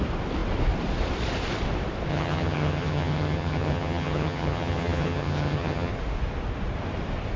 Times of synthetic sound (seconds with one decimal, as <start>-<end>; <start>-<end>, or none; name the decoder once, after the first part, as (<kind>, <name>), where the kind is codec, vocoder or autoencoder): 2.1-5.9 (vocoder, HiFi-GAN)